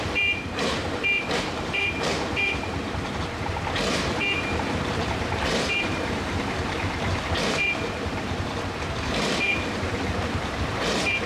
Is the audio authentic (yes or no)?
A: no